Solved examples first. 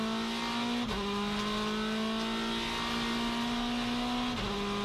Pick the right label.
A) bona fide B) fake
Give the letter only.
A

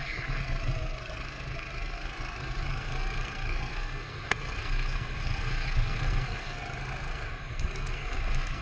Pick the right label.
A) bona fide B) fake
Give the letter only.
B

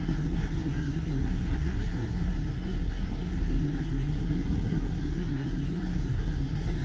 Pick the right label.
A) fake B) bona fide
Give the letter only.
A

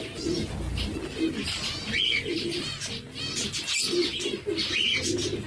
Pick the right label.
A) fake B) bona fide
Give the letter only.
B